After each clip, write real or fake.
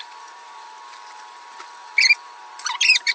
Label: fake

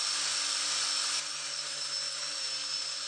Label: real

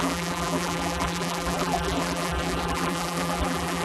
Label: fake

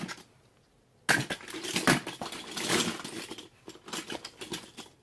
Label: real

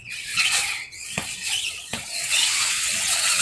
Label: fake